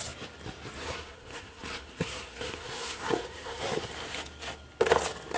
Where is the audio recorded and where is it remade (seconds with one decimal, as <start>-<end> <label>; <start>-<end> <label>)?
0.0-0.8 recorded; 0.8-3.9 remade; 3.9-5.4 recorded